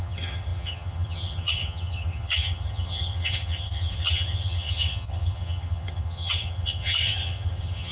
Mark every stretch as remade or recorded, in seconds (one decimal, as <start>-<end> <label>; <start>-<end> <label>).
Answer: 0.0-7.9 remade